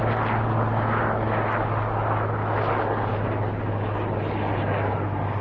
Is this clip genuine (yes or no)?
yes